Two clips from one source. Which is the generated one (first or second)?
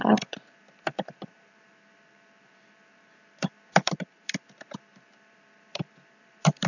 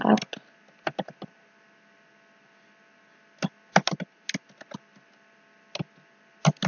first